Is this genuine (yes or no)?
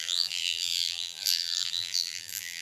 no